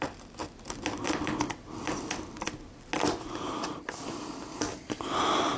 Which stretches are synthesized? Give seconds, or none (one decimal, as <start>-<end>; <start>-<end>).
none

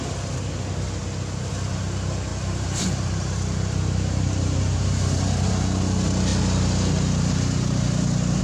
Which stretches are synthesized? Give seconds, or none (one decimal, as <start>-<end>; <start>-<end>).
2.3-5.5

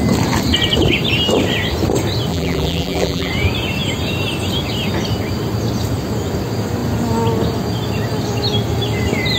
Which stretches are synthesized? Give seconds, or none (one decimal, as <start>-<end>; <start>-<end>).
2.3-3.3

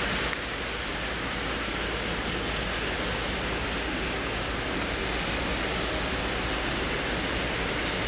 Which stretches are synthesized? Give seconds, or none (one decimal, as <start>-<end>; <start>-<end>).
none